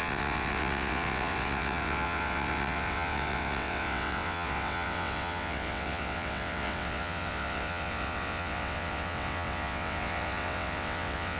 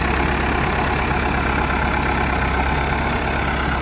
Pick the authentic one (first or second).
second